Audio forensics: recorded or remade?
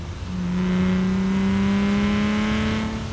recorded